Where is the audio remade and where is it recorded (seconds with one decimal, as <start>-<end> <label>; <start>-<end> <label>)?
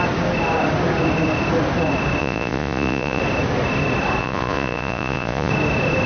0.0-2.2 recorded; 2.2-3.2 remade; 3.2-4.2 recorded; 4.2-5.5 remade; 5.5-6.1 recorded